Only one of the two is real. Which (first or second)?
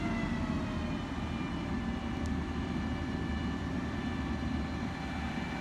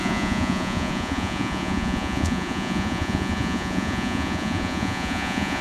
first